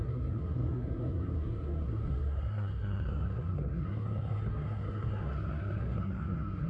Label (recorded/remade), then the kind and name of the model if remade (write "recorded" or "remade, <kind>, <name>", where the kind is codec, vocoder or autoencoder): remade, codec, SNAC